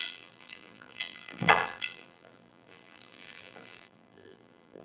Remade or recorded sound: remade